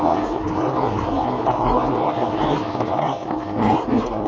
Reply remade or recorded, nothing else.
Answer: remade